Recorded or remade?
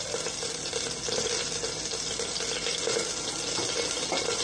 recorded